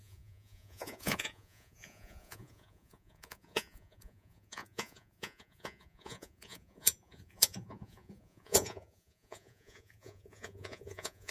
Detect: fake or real fake